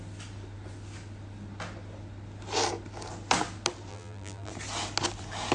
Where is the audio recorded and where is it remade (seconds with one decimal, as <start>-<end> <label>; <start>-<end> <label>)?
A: 0.0-3.9 recorded; 3.9-4.5 remade; 4.5-5.5 recorded